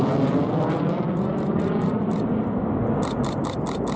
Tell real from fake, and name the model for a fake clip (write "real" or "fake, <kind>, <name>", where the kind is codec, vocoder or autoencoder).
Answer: real